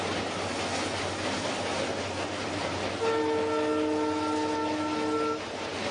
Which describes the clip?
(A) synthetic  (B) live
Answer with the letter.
B